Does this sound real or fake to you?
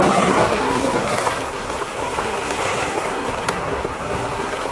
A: fake